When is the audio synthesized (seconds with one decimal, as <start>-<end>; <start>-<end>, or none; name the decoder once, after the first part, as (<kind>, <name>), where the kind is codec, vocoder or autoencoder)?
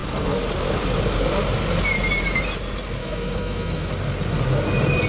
3.0-3.9 (autoencoder, DAC-VAE)